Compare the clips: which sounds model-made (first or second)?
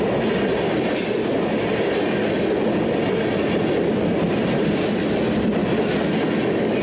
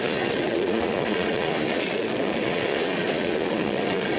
second